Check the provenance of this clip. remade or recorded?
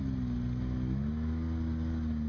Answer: recorded